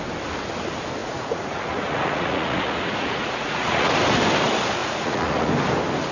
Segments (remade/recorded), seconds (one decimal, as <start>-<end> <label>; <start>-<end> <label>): 0.0-1.0 recorded; 1.0-3.9 remade; 3.9-4.8 recorded; 4.8-5.5 remade; 5.5-6.1 recorded